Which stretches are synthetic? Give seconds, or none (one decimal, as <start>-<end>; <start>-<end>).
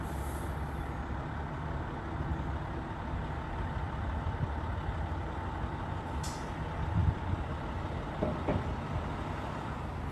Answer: none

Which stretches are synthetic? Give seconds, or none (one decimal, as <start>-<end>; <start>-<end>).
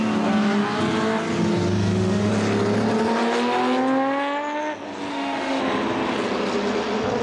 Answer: 1.7-2.3; 5.1-5.6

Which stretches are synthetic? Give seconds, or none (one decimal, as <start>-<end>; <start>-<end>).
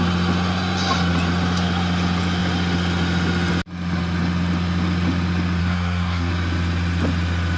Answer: 5.6-6.3